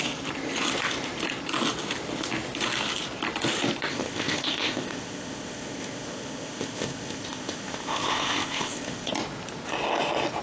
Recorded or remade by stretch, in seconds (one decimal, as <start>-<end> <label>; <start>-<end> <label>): 0.0-3.9 recorded; 3.9-9.1 remade; 9.1-10.4 recorded